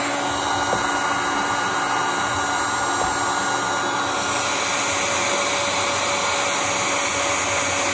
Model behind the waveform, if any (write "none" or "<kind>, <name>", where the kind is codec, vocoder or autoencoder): none